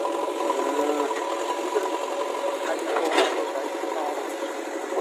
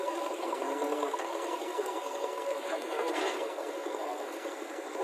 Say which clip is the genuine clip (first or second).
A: first